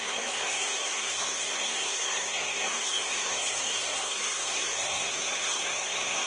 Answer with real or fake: fake